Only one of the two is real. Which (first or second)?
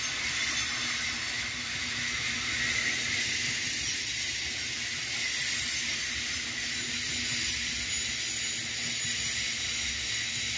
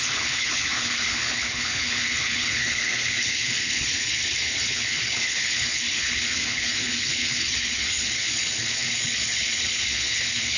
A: first